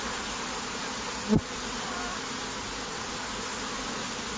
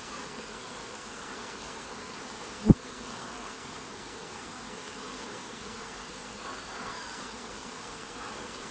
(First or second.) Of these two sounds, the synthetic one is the second